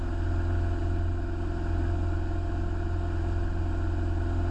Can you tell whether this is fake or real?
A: real